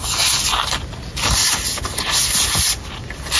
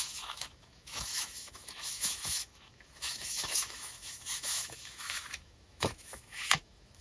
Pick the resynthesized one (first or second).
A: second